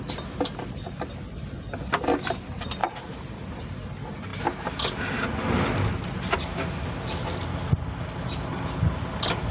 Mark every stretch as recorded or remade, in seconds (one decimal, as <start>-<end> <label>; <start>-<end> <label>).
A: 0.0-9.5 recorded